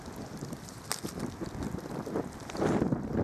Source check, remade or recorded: recorded